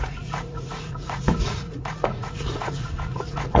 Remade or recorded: remade